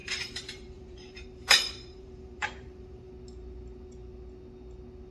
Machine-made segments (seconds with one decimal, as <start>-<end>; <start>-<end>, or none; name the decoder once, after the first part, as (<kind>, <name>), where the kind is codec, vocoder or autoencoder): 0.0-3.1 (vocoder, BigVGAN v2)